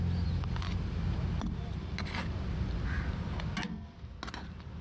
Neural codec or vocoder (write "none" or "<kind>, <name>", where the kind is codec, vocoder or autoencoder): none